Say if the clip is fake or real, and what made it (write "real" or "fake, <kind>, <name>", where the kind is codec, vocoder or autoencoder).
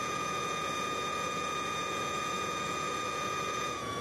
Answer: fake, vocoder, Vocos